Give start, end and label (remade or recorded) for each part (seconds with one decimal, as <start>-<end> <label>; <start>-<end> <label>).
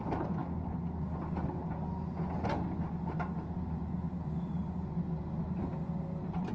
0.0-0.4 remade; 0.4-4.3 recorded; 4.3-6.5 remade